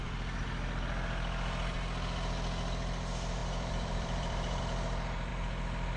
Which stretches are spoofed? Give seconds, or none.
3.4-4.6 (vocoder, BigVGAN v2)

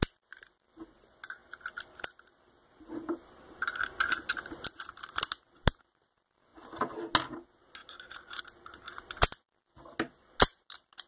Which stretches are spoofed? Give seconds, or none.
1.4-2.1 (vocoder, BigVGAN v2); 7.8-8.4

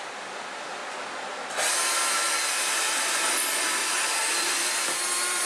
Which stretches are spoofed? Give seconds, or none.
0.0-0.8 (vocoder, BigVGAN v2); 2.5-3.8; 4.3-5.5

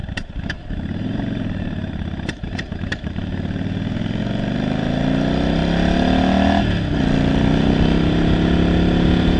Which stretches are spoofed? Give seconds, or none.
0.0-4.2 (vocoder, BigVGAN v2)

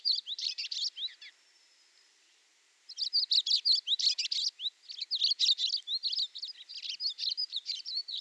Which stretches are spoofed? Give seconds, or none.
0.0-0.6 (vocoder, BigVGAN v2); 1.6-2.4; 7.3-8.2

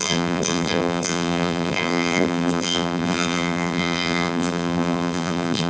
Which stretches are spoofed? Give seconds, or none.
0.0-5.7 (vocoder, BigVGAN v2)